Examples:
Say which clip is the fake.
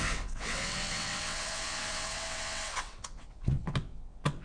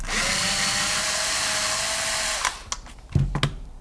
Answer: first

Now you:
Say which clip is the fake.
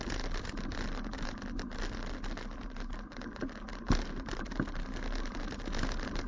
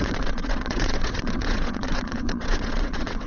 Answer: second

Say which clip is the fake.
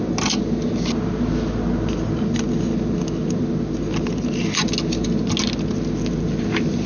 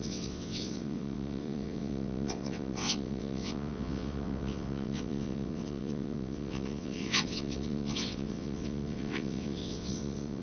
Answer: second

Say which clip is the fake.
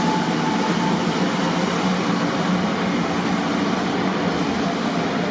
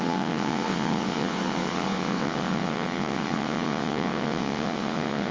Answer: second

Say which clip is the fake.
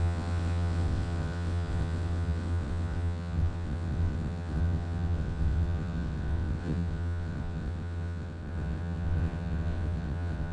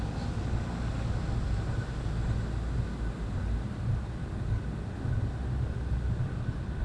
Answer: first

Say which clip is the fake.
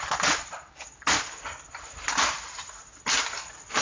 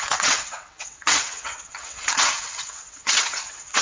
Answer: second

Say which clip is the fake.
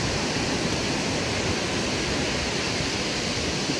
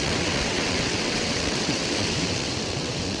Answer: second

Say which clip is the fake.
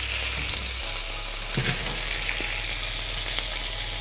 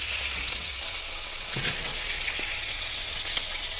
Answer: second